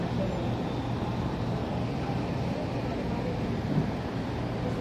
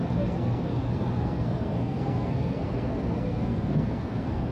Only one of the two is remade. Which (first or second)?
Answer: second